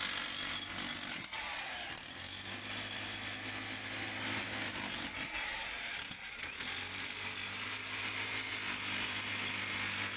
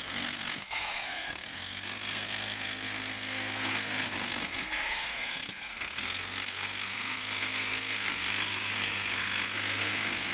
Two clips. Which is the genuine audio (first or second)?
first